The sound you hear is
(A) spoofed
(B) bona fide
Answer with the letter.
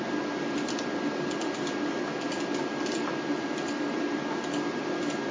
B